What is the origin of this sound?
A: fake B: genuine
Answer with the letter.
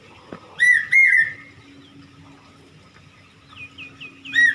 B